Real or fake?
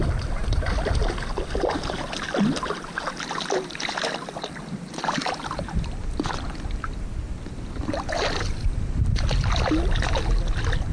real